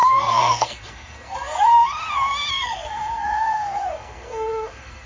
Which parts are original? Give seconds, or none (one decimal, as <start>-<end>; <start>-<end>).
1.9-2.5